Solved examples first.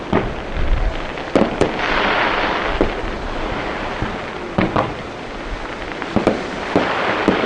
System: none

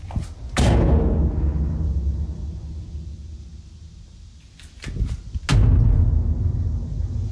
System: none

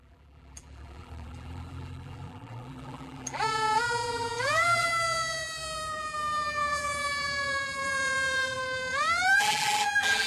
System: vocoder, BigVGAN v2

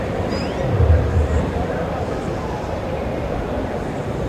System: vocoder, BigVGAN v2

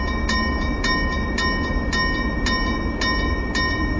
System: none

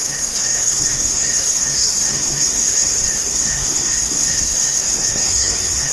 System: codec, SNAC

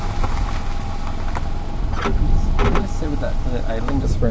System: none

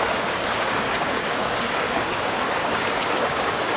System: codec, DAC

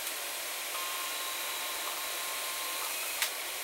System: vocoder, BigVGAN v2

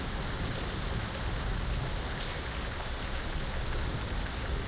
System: none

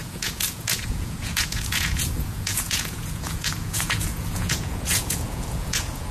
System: vocoder, Vocos